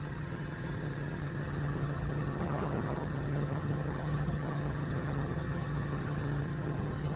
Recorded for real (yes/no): no